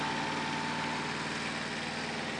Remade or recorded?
recorded